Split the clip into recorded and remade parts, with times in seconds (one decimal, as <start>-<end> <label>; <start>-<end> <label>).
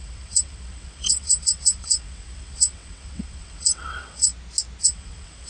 0.0-4.3 remade; 4.3-4.8 recorded; 4.8-5.5 remade